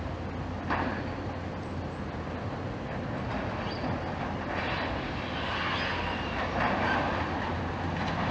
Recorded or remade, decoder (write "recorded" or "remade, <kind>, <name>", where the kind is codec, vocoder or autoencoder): recorded